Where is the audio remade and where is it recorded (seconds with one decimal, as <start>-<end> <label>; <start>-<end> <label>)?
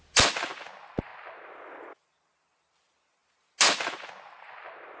0.0-5.0 recorded